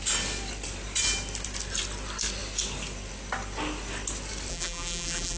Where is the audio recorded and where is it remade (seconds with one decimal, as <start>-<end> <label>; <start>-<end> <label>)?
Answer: 0.0-4.5 recorded; 4.5-5.4 remade

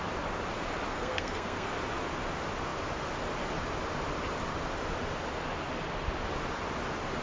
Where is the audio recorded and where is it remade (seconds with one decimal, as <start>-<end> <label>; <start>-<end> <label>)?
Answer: 0.0-0.9 recorded; 0.9-1.7 remade; 1.7-7.2 recorded

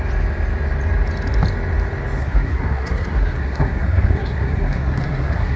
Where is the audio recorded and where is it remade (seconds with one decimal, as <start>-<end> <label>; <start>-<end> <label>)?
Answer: 0.0-2.2 recorded; 2.2-5.6 remade

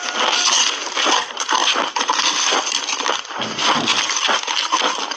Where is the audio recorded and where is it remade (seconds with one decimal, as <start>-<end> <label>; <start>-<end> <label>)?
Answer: 0.0-1.6 recorded; 1.6-3.1 remade; 3.1-5.2 recorded